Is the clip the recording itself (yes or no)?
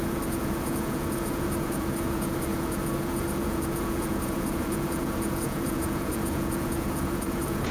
no